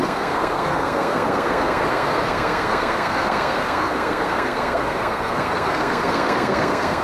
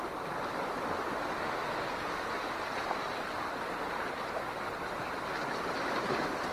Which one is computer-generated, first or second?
first